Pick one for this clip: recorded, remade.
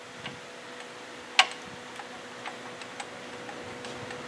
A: recorded